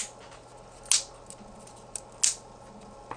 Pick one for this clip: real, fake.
real